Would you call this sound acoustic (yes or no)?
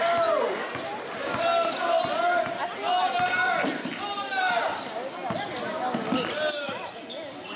yes